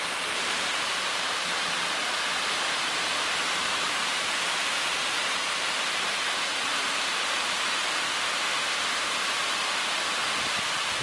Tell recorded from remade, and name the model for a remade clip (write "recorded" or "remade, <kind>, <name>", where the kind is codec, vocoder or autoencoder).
remade, vocoder, BigVGAN v2